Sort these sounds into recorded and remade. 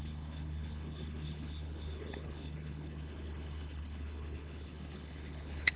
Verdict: remade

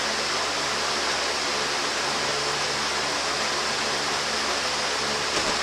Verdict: recorded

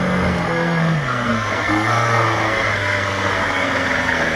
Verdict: remade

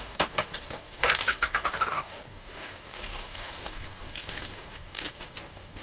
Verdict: remade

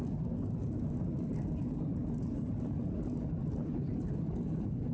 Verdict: recorded